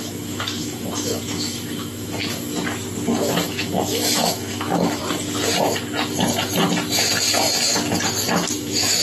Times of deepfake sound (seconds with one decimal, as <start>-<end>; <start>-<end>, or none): 0.0-2.2; 3.5-5.0; 8.6-9.0